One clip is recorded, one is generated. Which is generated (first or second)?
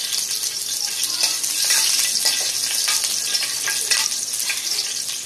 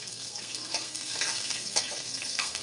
second